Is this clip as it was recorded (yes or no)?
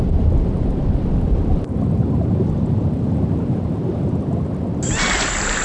yes